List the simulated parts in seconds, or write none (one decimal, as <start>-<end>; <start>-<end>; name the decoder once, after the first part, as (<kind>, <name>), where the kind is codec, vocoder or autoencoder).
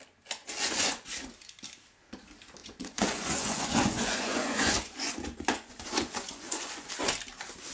0.4-1.1 (vocoder, Vocos); 2.6-6.9